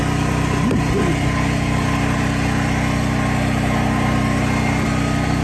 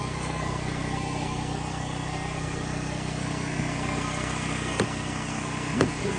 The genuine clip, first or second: first